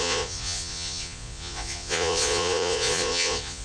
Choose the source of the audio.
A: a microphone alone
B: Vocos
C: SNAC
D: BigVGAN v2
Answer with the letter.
B